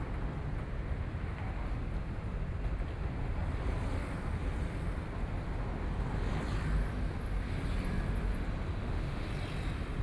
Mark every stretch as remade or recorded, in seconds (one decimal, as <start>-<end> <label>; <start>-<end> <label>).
0.0-8.8 recorded; 8.8-9.3 remade; 9.3-10.0 recorded